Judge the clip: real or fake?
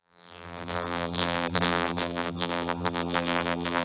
fake